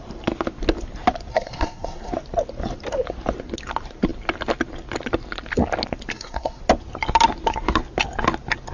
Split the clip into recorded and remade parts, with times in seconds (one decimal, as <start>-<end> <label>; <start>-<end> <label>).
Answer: 0.0-1.3 recorded; 1.3-2.1 remade; 2.1-6.1 recorded; 6.1-6.6 remade; 6.6-8.7 recorded